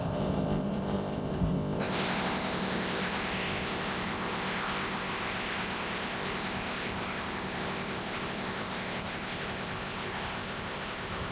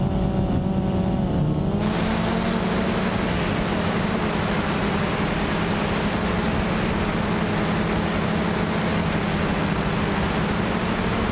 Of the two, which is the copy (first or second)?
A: first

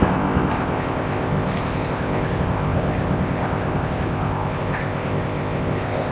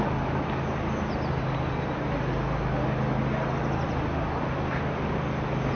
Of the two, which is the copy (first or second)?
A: first